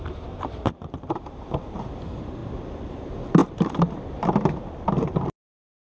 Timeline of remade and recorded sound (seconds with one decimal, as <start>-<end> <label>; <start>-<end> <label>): 0.0-2.4 remade; 2.4-2.9 recorded; 2.9-5.9 remade